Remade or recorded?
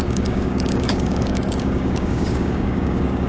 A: remade